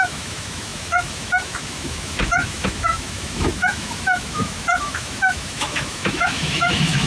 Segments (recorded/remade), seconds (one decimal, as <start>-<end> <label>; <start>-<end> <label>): 0.0-7.1 remade